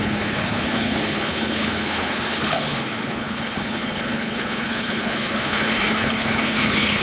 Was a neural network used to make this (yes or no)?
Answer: yes